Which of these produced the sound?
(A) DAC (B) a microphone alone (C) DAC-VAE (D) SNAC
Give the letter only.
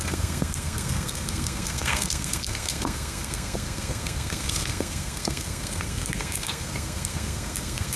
D